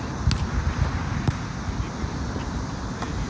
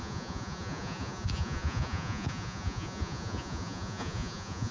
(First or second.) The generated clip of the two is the second